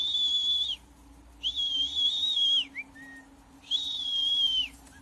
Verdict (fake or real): real